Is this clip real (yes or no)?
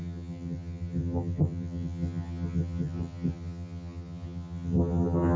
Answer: no